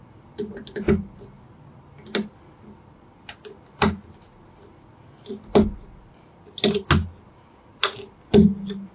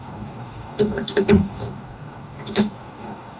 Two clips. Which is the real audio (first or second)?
first